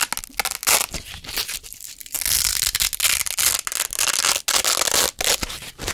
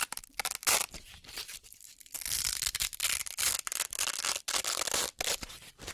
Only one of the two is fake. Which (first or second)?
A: second